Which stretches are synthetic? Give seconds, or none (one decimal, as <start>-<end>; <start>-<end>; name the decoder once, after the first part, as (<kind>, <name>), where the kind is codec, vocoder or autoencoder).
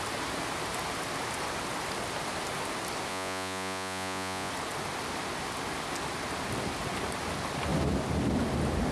3.1-4.5 (vocoder, Vocos)